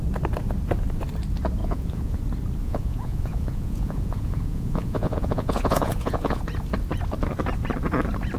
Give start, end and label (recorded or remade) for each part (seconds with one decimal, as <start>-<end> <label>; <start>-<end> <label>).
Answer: 0.0-1.6 recorded; 1.6-2.2 remade; 2.2-2.6 recorded; 2.6-6.4 remade; 6.4-8.4 recorded